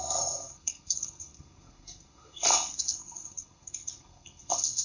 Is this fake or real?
fake